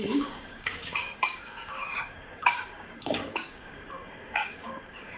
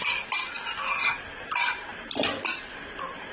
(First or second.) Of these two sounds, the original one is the second